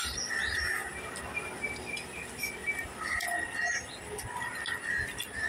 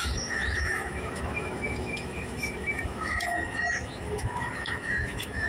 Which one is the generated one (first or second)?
second